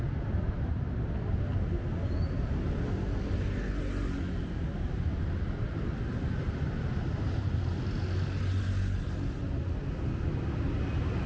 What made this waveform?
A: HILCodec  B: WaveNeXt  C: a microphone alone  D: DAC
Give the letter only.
C